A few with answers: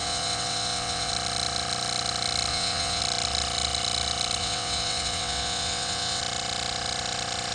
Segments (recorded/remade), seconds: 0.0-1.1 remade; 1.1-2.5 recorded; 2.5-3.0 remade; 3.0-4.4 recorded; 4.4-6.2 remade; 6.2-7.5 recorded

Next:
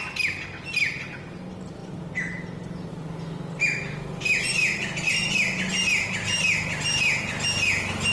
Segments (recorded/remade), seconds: 0.0-8.1 recorded